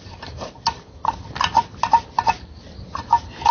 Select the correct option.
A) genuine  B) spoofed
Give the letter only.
A